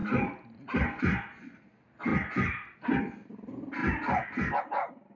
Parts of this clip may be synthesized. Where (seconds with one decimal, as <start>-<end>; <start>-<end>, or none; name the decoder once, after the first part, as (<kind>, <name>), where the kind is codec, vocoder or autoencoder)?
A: none